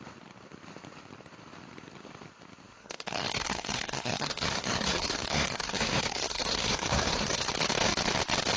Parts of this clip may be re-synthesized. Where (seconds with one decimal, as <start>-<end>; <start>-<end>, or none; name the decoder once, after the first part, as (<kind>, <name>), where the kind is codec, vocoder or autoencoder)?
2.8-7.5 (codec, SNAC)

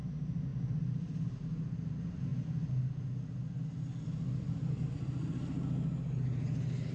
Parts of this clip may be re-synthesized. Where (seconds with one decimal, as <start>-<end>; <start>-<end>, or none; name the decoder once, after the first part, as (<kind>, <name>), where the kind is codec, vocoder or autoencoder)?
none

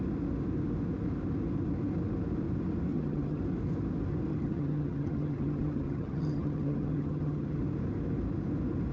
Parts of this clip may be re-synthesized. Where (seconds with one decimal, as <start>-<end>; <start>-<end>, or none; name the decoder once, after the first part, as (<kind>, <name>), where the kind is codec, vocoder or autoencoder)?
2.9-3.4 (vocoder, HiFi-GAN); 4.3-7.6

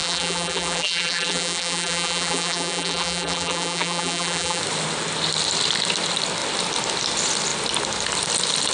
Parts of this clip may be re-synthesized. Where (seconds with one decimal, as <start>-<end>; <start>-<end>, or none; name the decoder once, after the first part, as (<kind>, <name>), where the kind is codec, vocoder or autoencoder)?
0.0-4.6 (vocoder, BigVGAN v2)

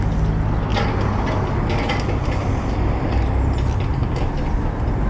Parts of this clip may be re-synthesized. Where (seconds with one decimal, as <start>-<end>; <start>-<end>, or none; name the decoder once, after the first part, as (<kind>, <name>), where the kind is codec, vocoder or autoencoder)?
3.9-4.4 (vocoder, BigVGAN v2)

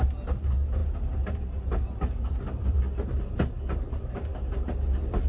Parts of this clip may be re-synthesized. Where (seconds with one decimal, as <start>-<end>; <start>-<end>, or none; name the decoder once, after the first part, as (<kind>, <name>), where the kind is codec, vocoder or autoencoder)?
none

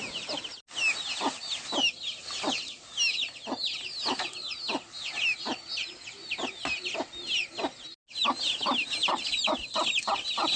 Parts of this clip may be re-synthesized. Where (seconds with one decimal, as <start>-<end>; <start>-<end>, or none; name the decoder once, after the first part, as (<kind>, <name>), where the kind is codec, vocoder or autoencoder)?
none

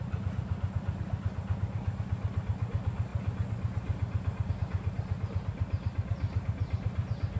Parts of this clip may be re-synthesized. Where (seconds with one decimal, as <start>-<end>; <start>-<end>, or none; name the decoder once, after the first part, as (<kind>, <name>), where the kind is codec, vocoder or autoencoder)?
0.0-7.4 (vocoder, BigVGAN v2)